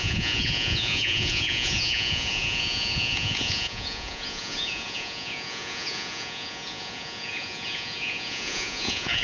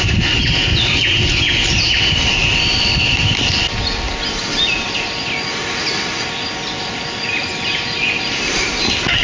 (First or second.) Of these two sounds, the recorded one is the second